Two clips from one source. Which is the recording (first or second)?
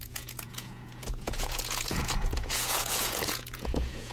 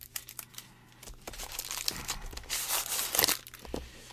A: second